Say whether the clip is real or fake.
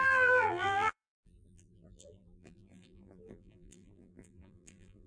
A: fake